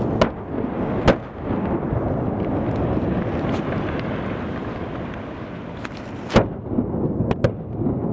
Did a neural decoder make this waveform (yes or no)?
no